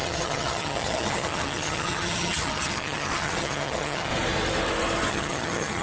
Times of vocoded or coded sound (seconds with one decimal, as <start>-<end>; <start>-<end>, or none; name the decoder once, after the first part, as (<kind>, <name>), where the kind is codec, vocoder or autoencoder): 0.0-4.1 (vocoder, HiFi-GAN); 5.1-5.8